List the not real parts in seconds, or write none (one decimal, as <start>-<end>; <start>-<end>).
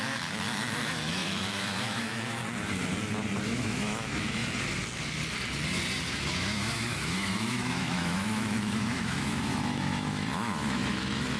0.0-2.4; 3.4-4.4; 6.1-11.4